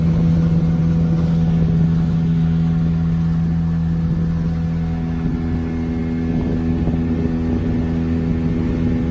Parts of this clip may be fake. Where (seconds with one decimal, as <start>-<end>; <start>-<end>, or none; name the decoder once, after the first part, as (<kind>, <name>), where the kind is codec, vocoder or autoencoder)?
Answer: none